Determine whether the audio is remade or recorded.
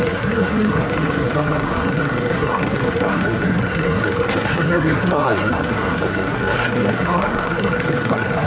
remade